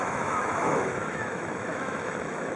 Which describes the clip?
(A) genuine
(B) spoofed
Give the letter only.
B